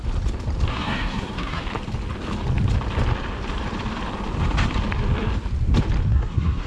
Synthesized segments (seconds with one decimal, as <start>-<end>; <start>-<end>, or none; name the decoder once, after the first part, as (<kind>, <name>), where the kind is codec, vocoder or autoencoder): 0.7-1.6 (codec, SNAC); 6.1-6.7